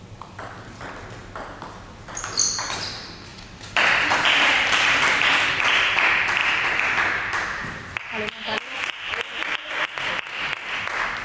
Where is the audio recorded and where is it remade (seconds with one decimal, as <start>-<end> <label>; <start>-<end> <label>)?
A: 0.0-3.3 recorded; 3.3-5.2 remade; 5.2-6.4 recorded; 6.4-9.7 remade; 9.7-11.2 recorded